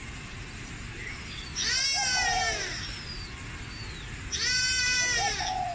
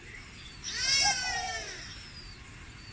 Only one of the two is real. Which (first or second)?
first